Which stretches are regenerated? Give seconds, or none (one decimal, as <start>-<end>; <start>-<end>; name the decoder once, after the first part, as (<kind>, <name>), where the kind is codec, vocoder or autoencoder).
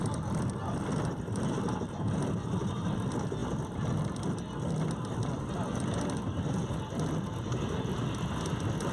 none